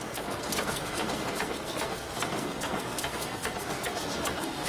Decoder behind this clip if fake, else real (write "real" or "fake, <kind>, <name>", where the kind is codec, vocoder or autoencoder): fake, codec, SNAC